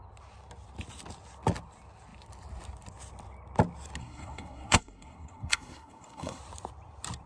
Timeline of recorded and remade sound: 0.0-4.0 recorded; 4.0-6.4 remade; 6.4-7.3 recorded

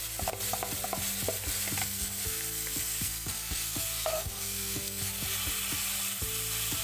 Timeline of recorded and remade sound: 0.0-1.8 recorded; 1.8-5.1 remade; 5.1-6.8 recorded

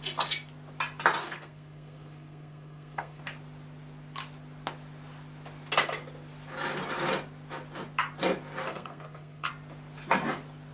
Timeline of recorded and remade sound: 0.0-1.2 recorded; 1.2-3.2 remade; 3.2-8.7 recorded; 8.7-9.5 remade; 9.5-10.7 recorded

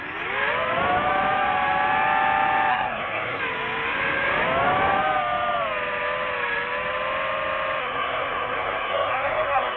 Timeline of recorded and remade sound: 0.0-2.7 recorded; 2.7-3.4 remade; 3.4-7.8 recorded; 7.8-9.8 remade

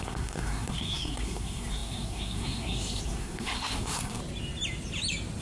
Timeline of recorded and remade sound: 0.0-4.2 remade; 4.2-5.4 recorded